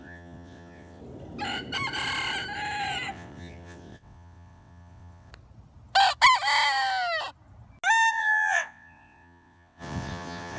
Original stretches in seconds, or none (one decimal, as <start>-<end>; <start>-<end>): 1.0-3.1; 5.3-8.1

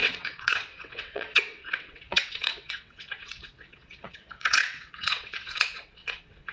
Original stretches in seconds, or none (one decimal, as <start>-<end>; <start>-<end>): none